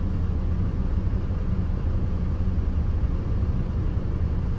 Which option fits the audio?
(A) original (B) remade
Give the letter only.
B